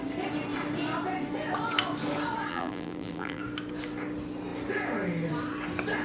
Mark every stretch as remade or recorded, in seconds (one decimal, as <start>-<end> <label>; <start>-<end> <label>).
0.0-2.5 recorded; 2.5-3.4 remade; 3.4-6.0 recorded

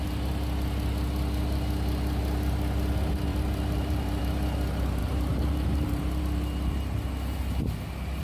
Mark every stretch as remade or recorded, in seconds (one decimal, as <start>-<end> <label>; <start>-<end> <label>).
0.0-3.3 recorded; 3.3-4.2 remade; 4.2-5.0 recorded; 5.0-6.2 remade; 6.2-8.2 recorded

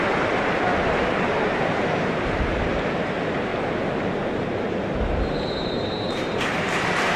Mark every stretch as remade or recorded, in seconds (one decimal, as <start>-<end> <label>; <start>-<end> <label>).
0.0-3.5 remade; 3.5-4.4 recorded; 4.4-7.2 remade

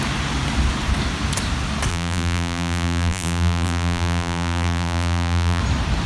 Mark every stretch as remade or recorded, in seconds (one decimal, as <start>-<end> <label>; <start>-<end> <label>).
0.0-1.9 recorded; 1.9-5.6 remade; 5.6-6.1 recorded

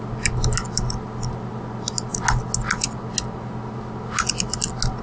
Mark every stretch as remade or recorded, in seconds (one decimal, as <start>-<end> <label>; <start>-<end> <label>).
0.0-5.0 recorded

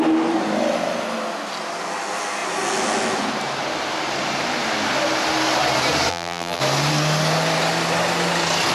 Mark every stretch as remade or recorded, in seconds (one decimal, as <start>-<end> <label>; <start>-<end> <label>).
0.0-6.1 recorded; 6.1-6.6 remade; 6.6-8.7 recorded

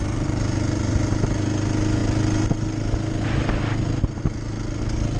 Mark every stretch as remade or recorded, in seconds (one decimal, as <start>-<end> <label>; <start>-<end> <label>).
0.0-5.2 recorded